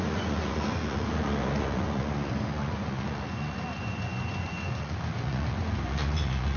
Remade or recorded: remade